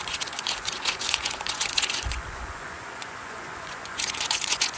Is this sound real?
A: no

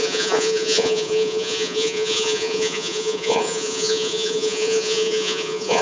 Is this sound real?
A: no